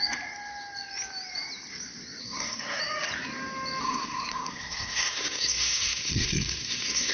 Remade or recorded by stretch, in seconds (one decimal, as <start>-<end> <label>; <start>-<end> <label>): 0.0-2.2 recorded; 2.2-2.8 remade; 2.8-3.8 recorded; 3.8-7.1 remade